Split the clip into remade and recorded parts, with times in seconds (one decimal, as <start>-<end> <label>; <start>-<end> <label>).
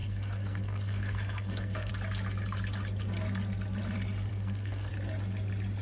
0.0-1.9 remade; 1.9-4.3 recorded; 4.3-4.9 remade; 4.9-5.8 recorded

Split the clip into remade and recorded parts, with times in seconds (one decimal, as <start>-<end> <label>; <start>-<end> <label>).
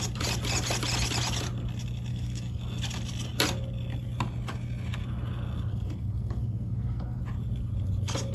0.0-2.1 recorded; 2.1-2.6 remade; 2.6-5.7 recorded; 5.7-7.2 remade; 7.2-8.3 recorded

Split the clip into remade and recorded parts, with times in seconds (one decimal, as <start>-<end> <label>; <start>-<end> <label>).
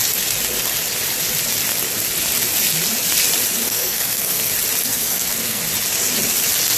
0.0-3.6 recorded; 3.6-4.5 remade; 4.5-4.9 recorded; 4.9-5.6 remade; 5.6-6.8 recorded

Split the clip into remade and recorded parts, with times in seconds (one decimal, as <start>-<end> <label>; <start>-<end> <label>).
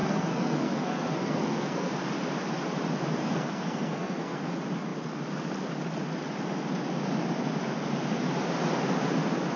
0.0-1.9 remade; 1.9-3.2 recorded; 3.2-4.5 remade; 4.5-9.6 recorded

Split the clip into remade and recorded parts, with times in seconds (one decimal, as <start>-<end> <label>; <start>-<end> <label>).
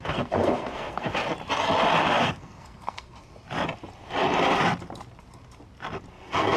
0.0-1.2 remade; 1.2-2.2 recorded; 2.2-3.3 remade; 3.3-6.1 recorded; 6.1-6.6 remade